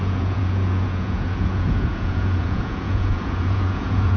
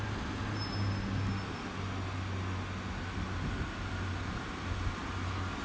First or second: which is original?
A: second